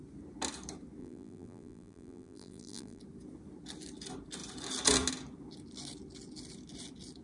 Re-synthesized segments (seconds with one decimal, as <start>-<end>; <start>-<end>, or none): 1.0-3.0

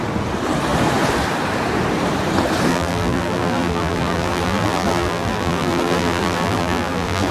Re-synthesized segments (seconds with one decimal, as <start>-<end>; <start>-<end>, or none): 2.7-7.3

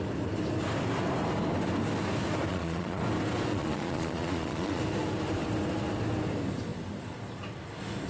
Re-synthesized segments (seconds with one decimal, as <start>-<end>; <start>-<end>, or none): 2.5-3.0; 3.5-4.8

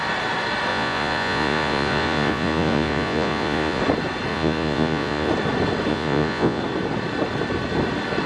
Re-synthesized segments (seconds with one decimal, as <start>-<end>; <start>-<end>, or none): 0.7-3.8; 4.3-5.3; 5.9-6.6

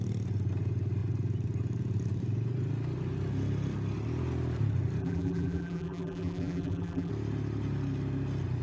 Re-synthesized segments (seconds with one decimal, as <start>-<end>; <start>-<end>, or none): 5.0-7.1

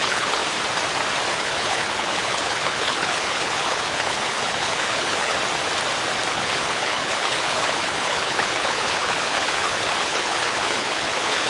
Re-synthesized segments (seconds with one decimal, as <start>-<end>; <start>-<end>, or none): 0.0-0.4; 1.3-5.3; 6.3-11.5